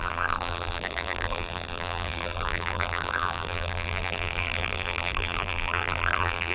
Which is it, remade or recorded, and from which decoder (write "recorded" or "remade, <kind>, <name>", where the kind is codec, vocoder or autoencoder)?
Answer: remade, vocoder, BigVGAN v2